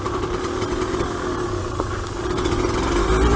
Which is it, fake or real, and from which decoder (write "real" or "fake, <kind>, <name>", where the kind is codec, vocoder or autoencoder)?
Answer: real